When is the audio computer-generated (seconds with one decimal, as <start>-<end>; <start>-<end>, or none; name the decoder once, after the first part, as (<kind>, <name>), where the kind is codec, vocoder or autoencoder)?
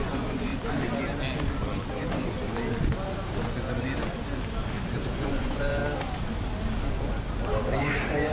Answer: 0.0-0.5 (vocoder, Vocos); 1.9-2.4; 5.1-5.8; 7.8-8.3